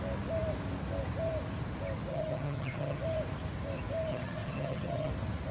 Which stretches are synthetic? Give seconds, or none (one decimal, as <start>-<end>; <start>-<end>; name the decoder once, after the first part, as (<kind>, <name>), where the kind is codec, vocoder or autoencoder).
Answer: 2.1-3.0 (vocoder, HiFi-GAN); 4.1-5.1